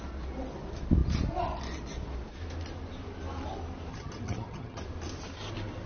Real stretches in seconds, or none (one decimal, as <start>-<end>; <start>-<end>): 0.0-3.9; 4.8-5.9